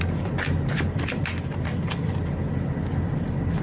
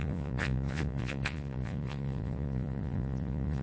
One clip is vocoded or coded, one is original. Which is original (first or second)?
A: first